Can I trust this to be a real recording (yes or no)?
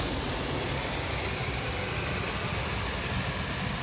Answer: yes